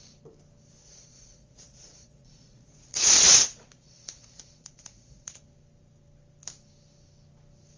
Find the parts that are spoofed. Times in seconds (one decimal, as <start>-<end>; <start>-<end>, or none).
0.8-5.4